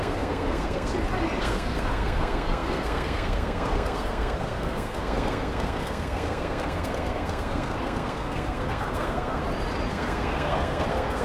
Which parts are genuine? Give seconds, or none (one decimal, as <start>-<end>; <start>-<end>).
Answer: 0.9-1.4; 9.4-9.9